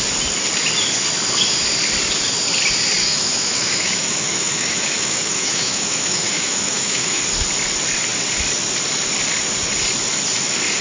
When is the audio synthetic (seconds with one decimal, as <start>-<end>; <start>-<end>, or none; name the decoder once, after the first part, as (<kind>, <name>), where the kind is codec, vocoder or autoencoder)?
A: 3.0-7.2 (autoencoder, DAC-VAE)